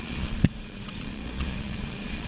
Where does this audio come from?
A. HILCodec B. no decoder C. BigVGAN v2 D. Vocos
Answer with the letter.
D